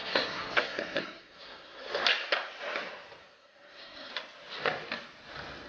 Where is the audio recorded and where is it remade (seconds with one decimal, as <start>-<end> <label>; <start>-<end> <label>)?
0.0-1.9 remade; 1.9-3.2 recorded; 3.2-4.1 remade; 4.1-5.7 recorded